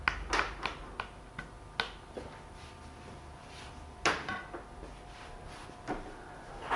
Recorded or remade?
recorded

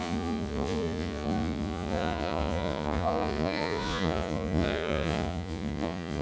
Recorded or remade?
remade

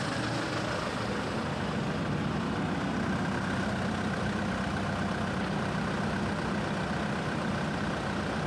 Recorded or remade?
recorded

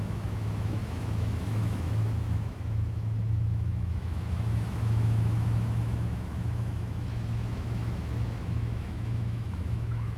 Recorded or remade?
remade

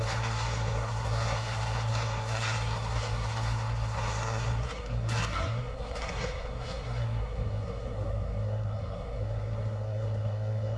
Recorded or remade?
remade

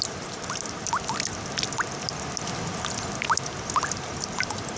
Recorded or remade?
recorded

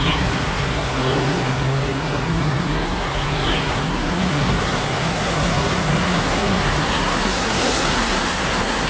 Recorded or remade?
remade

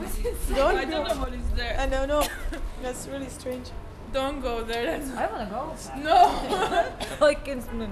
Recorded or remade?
recorded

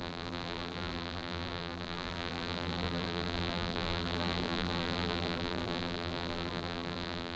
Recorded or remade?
remade